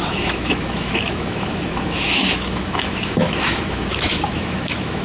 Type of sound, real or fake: fake